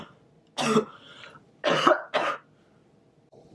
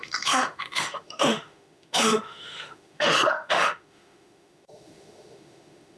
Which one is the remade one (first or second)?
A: second